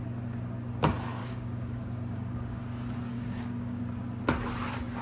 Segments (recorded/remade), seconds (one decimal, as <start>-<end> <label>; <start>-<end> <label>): 0.0-1.2 recorded; 1.2-2.6 remade; 2.6-3.1 recorded; 3.1-3.8 remade; 3.8-5.0 recorded